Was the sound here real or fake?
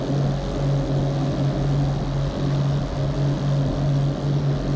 real